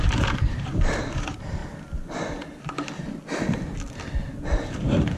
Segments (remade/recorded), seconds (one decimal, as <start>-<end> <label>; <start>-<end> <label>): 0.0-1.6 remade; 1.6-4.7 recorded; 4.7-5.2 remade